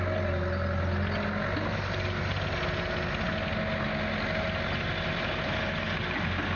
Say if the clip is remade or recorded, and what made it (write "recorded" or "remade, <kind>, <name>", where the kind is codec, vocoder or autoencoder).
recorded